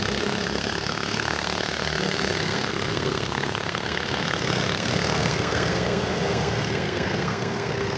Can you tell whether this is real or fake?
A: fake